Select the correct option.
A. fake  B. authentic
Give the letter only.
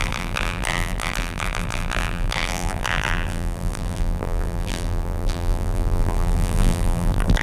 A